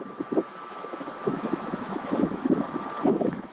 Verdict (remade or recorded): remade